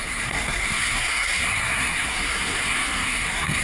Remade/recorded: remade